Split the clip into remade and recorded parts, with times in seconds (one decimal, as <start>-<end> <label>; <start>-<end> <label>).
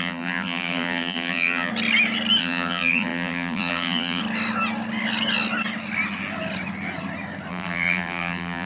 0.0-1.7 remade; 1.7-2.4 recorded; 2.4-4.2 remade; 4.2-7.5 recorded; 7.5-8.7 remade